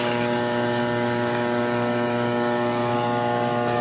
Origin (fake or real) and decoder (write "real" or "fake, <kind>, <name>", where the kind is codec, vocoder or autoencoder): fake, codec, DAC